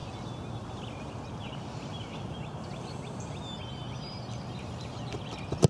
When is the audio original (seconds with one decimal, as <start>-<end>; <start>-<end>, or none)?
0.0-5.7

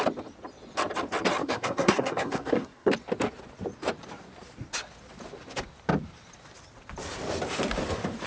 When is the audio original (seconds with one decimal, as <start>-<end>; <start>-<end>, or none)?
0.0-1.4; 2.9-8.3

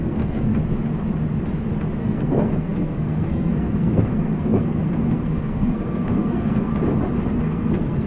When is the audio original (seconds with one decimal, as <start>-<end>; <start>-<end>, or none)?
0.5-2.0; 6.7-7.4

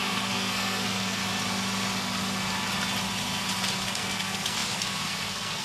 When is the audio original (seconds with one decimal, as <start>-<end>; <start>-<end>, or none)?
1.2-3.8

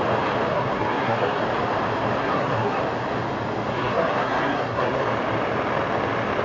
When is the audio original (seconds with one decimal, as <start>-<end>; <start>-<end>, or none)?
0.0-0.5; 1.4-2.2; 2.8-3.7; 5.0-6.4

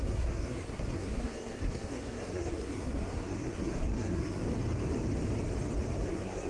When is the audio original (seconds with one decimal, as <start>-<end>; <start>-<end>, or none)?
4.4-6.1

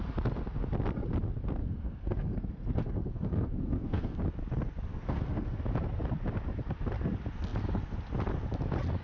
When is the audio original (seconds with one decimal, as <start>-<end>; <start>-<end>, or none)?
0.0-1.6; 4.2-4.9; 5.6-9.0

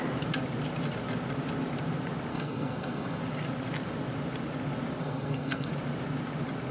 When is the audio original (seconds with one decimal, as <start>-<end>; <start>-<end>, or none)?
0.0-2.3; 3.2-5.0; 5.7-6.7